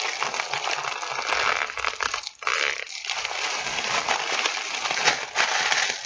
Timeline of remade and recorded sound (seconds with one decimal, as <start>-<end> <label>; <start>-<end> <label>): 0.0-2.5 recorded; 2.5-5.0 remade; 5.0-6.1 recorded